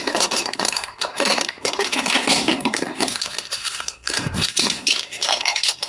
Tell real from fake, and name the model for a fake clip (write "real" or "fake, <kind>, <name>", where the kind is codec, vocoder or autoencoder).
fake, codec, SNAC